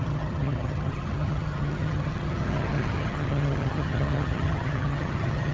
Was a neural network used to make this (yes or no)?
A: yes